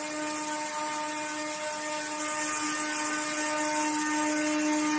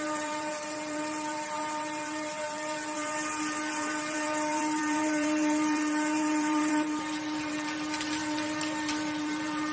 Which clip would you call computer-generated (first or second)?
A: second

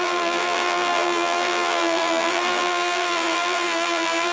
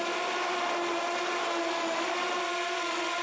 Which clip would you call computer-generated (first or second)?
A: first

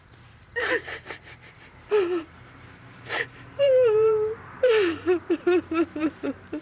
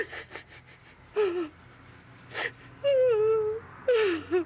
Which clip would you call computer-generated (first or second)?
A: first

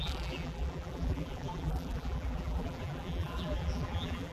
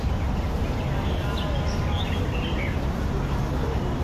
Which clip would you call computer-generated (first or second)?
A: first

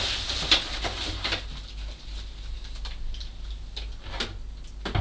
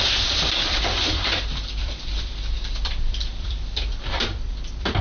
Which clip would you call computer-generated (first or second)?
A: second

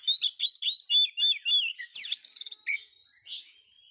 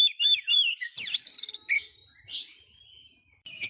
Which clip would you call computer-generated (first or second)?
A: second